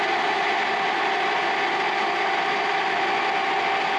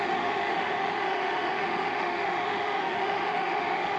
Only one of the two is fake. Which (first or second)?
second